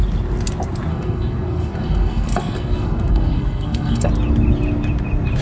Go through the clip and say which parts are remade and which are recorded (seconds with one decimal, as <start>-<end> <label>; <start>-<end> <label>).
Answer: 0.0-0.9 recorded; 0.9-4.1 remade; 4.1-5.4 recorded